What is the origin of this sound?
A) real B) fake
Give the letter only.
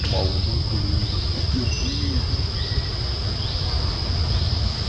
A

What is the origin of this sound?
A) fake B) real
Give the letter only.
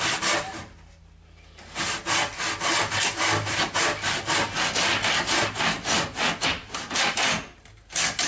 B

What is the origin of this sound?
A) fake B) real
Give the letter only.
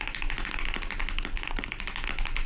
B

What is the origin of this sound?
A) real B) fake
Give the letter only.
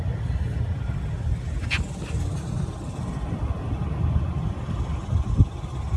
A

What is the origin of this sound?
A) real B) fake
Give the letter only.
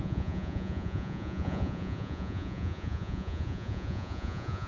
B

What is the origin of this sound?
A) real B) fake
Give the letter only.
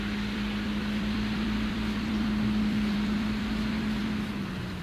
B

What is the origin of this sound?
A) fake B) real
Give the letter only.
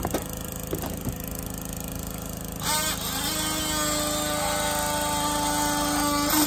B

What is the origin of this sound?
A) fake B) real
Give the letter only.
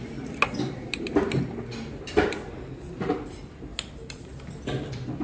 B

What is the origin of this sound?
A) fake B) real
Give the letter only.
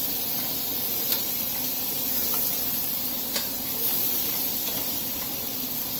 B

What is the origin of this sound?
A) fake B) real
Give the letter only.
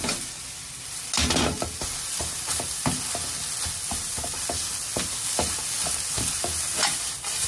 B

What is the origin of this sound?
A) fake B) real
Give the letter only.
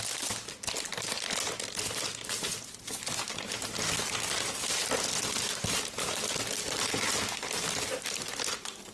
B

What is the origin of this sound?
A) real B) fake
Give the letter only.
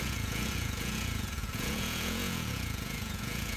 B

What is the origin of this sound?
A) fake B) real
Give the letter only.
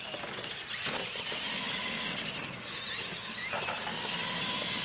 B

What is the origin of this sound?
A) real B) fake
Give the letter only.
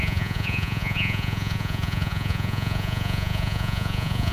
B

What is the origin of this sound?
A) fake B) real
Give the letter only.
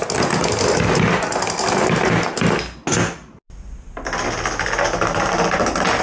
B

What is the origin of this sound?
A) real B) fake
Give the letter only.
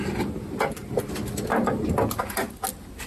A